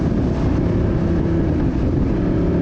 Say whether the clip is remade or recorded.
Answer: recorded